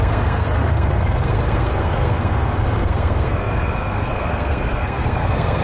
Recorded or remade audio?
remade